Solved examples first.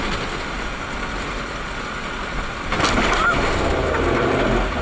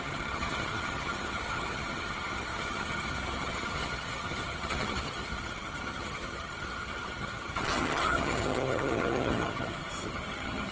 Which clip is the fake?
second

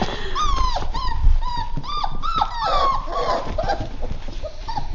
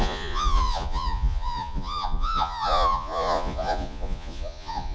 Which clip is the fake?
second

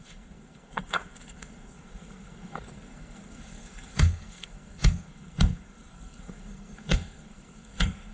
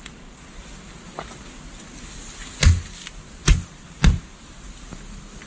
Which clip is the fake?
first